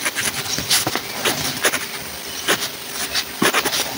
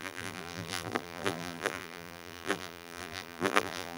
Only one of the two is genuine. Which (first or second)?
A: first